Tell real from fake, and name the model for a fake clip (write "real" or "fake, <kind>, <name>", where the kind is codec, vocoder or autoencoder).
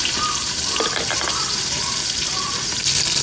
real